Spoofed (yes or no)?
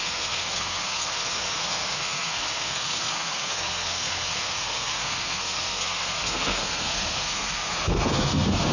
yes